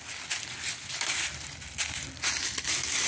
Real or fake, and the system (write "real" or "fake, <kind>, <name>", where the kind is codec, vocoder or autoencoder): real